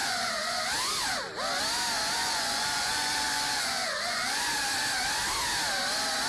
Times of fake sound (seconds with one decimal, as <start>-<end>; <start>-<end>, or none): 0.0-0.6; 2.2-4.5